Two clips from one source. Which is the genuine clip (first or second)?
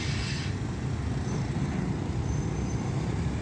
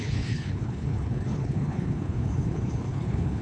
first